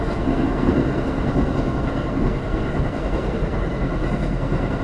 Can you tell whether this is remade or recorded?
remade